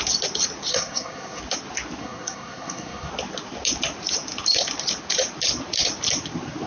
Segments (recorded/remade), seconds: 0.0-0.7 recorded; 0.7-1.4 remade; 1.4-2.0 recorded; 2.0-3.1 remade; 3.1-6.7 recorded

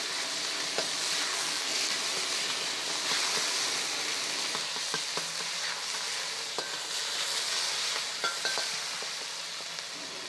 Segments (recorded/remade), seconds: 0.0-1.3 recorded; 1.3-1.9 remade; 1.9-10.3 recorded

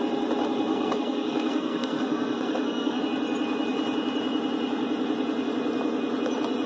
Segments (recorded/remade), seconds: 0.0-0.7 recorded; 0.7-3.0 remade; 3.0-6.7 recorded

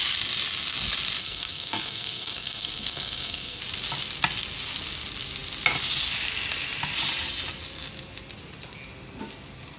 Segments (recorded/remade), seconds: 0.0-1.2 recorded; 1.2-3.6 remade; 3.6-9.8 recorded